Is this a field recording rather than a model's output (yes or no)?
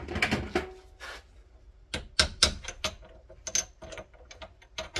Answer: yes